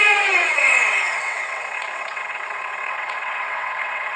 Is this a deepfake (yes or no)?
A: yes